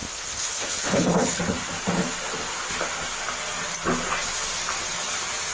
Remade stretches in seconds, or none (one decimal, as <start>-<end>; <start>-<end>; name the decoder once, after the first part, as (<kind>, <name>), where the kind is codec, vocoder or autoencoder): 0.0-1.4 (codec, HILCodec)